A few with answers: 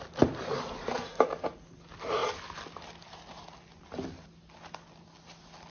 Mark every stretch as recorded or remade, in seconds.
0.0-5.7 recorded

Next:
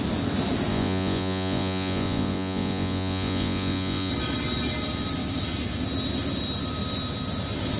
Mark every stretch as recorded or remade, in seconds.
0.0-0.7 recorded; 0.7-4.1 remade; 4.1-7.8 recorded

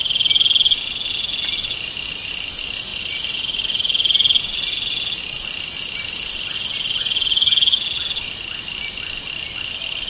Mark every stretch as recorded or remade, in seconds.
0.0-10.1 recorded

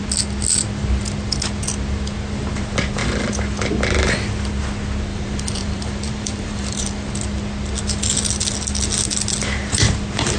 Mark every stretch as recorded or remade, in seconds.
0.0-5.1 recorded; 5.1-6.9 remade; 6.9-10.4 recorded

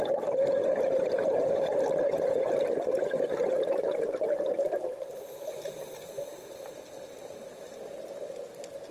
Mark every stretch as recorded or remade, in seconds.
0.0-6.3 remade; 6.3-8.9 recorded

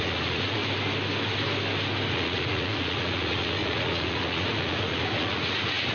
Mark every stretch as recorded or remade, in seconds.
0.0-0.6 remade; 0.6-2.1 recorded; 2.1-5.9 remade